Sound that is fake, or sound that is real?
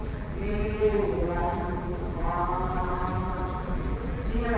fake